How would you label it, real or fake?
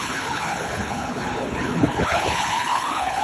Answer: fake